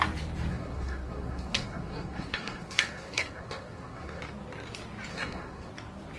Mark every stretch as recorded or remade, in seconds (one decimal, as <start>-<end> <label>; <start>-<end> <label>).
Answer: 0.0-0.5 recorded; 0.5-4.2 remade; 4.2-5.1 recorded; 5.1-5.7 remade; 5.7-6.2 recorded